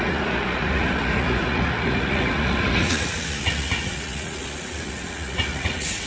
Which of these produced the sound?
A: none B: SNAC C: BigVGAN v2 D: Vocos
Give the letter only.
D